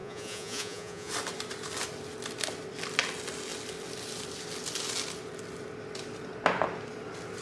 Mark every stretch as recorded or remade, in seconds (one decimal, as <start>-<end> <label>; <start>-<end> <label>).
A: 0.0-1.1 remade; 1.1-7.4 recorded